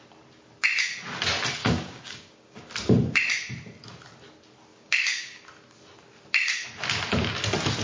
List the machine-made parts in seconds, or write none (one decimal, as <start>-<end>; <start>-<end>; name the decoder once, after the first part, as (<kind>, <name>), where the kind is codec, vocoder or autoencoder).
1.6-2.6 (codec, DAC); 4.7-5.4